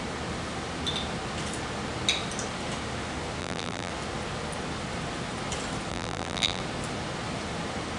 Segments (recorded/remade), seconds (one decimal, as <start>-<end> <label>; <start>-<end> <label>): 0.0-3.4 recorded; 3.4-3.9 remade; 3.9-5.9 recorded; 5.9-6.6 remade; 6.6-8.0 recorded

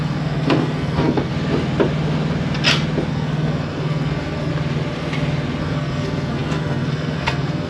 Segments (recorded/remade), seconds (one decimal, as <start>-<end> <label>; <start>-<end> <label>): 0.0-1.3 remade; 1.3-3.1 recorded; 3.1-4.5 remade; 4.5-5.6 recorded; 5.6-7.7 remade

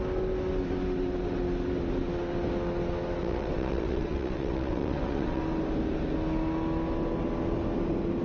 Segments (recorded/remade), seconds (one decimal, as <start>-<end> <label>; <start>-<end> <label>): 0.0-3.2 recorded; 3.2-5.4 remade; 5.4-8.2 recorded

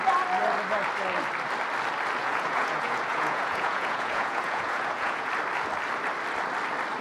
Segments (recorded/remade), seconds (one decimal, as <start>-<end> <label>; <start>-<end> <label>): 0.0-2.2 recorded; 2.2-5.3 remade; 5.3-7.0 recorded

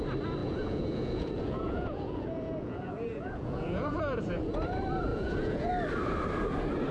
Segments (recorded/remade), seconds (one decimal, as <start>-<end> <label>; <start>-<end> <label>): 0.0-0.4 recorded; 0.4-4.5 remade; 4.5-5.1 recorded; 5.1-5.7 remade; 5.7-6.9 recorded

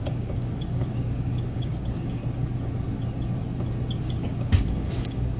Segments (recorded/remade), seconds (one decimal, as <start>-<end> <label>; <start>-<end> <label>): 0.0-2.2 remade; 2.2-4.0 recorded; 4.0-5.4 remade